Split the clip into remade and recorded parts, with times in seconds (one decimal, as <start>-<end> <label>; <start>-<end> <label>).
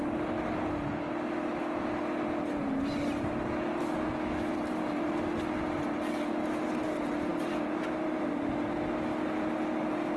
0.0-3.8 recorded; 3.8-4.5 remade; 4.5-10.2 recorded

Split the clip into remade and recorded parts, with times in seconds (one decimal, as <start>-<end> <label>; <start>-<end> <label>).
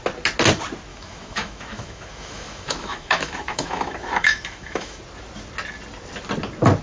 0.0-0.9 recorded; 0.9-5.0 remade; 5.0-6.8 recorded